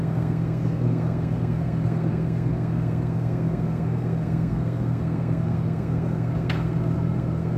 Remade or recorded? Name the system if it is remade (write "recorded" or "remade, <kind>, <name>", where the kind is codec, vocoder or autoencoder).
remade, codec, SNAC